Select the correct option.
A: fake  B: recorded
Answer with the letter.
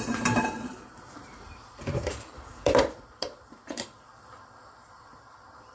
A